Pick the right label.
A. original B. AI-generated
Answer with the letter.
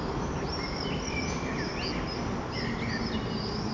A